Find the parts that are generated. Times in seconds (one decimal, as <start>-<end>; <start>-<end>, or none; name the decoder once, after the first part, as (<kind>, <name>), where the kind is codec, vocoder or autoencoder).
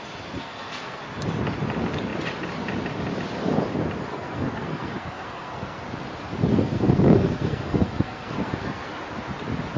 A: 0.4-1.0 (codec, SNAC); 4.1-5.8; 6.5-8.9